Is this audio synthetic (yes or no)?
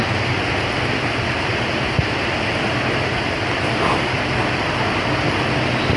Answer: no